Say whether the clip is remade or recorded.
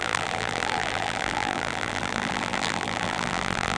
remade